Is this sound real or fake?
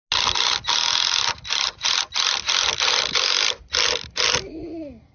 real